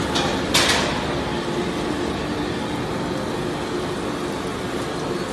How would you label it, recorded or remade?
recorded